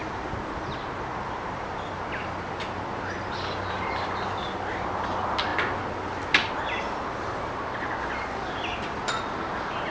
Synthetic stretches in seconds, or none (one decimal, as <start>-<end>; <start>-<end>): none